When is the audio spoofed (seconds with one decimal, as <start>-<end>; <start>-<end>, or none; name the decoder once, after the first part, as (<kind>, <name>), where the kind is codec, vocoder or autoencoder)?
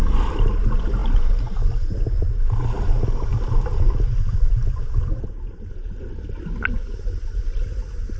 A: none